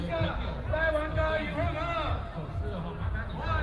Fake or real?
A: real